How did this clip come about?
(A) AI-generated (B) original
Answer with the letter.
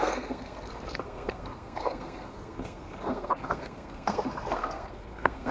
A